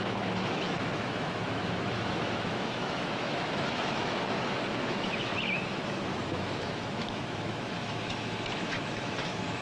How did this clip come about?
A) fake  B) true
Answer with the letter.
A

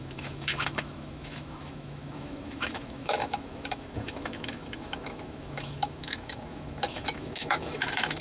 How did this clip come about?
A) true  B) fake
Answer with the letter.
B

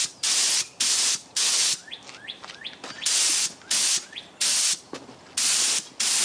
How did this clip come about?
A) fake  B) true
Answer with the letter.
B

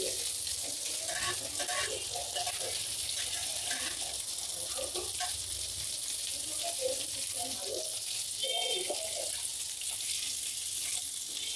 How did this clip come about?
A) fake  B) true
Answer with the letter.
B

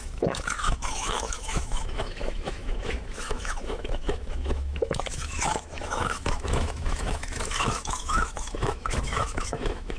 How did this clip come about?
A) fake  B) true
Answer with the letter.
A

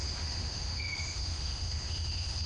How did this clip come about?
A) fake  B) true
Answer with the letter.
A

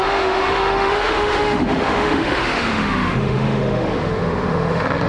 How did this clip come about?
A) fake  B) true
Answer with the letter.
A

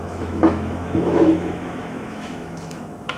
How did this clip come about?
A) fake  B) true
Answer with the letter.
A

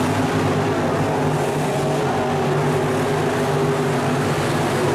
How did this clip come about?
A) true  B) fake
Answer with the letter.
A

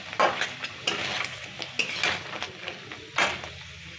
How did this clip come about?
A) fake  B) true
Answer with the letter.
B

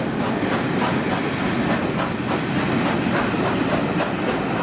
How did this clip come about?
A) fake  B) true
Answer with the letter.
B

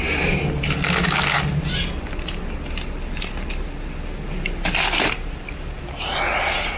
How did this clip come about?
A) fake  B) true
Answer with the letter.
B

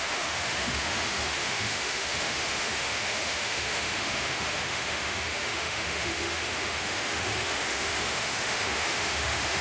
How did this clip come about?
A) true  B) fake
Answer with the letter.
B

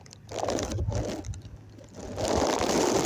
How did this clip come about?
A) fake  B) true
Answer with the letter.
B